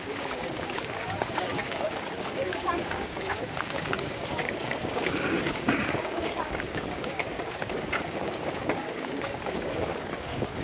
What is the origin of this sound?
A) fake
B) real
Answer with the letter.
A